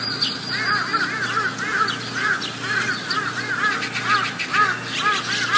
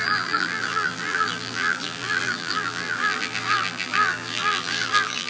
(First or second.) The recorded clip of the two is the first